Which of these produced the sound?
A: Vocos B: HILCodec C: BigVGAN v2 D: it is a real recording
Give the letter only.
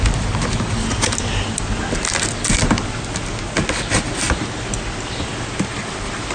D